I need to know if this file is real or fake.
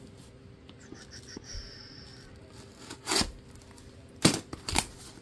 real